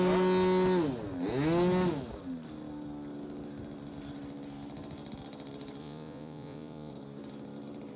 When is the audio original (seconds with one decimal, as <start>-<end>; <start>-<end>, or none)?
0.0-5.8; 6.9-8.0